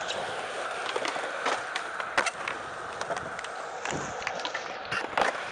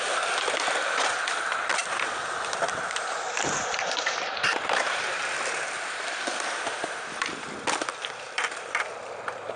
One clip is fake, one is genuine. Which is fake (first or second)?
second